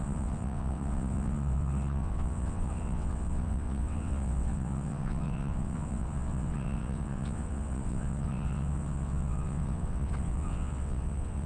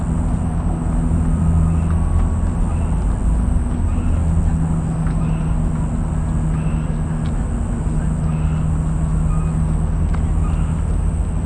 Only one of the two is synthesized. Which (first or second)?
first